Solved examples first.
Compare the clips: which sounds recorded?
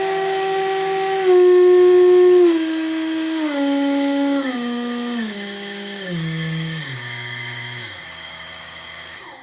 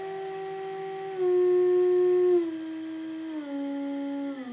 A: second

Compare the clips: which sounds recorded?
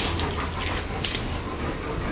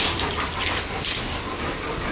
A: first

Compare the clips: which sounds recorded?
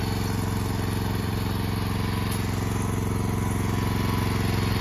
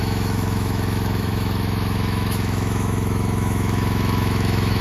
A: first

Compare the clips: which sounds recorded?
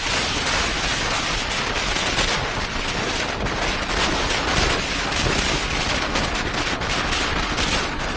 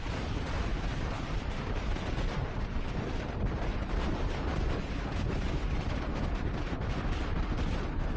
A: first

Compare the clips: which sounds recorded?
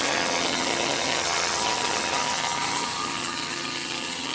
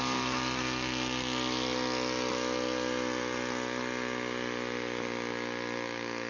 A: second